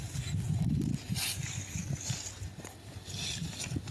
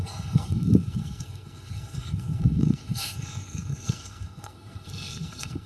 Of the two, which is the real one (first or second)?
first